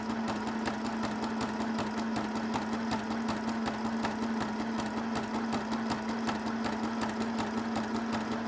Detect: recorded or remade recorded